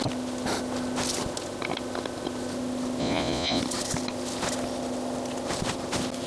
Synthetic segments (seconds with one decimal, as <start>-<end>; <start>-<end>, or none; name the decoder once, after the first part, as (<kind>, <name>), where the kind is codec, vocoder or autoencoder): 3.0-3.6 (vocoder, Vocos)